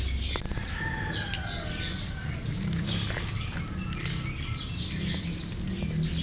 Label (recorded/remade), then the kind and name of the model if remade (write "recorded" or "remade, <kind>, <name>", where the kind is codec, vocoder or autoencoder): recorded